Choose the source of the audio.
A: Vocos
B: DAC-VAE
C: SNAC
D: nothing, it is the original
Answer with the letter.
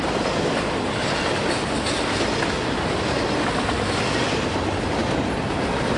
D